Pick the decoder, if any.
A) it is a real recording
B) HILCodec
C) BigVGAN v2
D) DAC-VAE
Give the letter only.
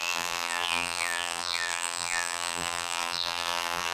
C